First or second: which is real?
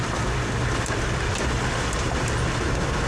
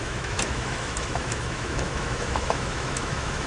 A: first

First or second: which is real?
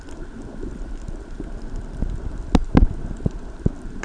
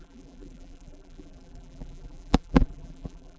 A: first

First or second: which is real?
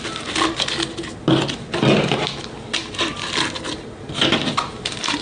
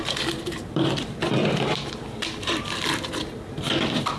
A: first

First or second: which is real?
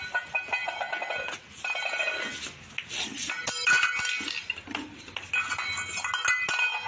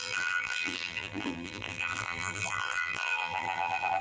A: first